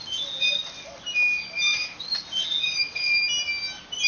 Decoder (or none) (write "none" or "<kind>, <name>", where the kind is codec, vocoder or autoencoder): none